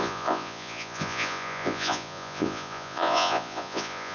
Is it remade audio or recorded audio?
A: remade